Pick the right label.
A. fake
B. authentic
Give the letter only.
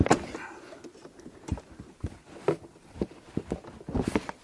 B